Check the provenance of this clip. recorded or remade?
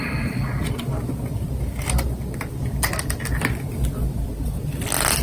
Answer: remade